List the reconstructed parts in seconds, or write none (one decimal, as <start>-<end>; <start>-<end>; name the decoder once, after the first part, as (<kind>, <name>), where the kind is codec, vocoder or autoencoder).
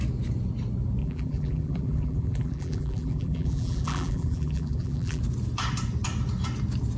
1.0-5.2 (vocoder, BigVGAN v2)